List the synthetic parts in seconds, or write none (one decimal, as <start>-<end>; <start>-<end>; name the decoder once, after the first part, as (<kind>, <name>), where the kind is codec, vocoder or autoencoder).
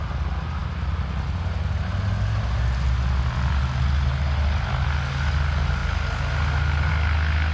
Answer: none